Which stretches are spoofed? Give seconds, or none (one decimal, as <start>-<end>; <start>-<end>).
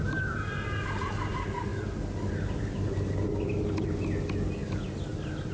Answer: none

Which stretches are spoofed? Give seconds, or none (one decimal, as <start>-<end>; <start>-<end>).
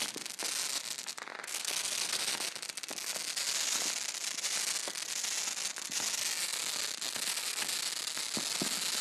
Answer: 1.5-2.2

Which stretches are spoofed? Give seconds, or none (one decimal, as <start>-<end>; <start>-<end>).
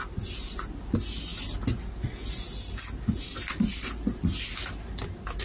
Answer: none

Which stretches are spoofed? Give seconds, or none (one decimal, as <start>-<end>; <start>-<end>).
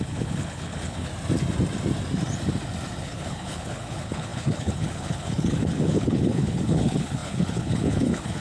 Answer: 0.0-1.1; 3.0-8.4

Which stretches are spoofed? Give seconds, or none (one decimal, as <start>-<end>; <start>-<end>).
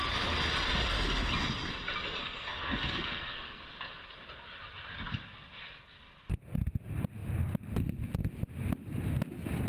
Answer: 2.2-3.6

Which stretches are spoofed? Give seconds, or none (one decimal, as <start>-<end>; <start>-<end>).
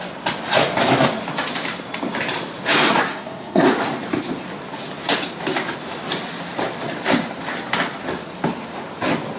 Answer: 3.1-3.7